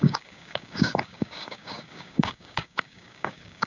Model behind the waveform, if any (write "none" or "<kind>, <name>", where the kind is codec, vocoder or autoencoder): codec, DAC